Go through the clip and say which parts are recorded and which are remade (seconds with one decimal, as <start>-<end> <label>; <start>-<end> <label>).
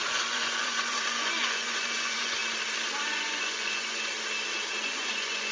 0.0-2.4 remade; 2.4-3.0 recorded; 3.0-4.1 remade; 4.1-4.8 recorded; 4.8-5.5 remade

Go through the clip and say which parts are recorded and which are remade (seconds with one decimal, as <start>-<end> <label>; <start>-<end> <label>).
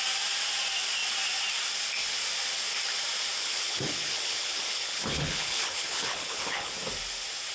0.0-3.4 recorded; 3.4-6.7 remade; 6.7-7.5 recorded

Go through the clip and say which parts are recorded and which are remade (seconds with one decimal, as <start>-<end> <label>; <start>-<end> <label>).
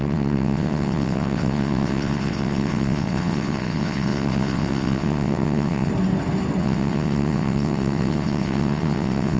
0.0-5.9 remade; 5.9-6.6 recorded; 6.6-9.4 remade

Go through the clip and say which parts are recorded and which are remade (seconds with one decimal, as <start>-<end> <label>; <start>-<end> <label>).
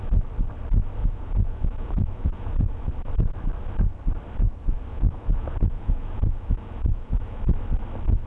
0.0-1.0 recorded; 1.0-2.9 remade; 2.9-4.9 recorded; 4.9-7.4 remade; 7.4-8.3 recorded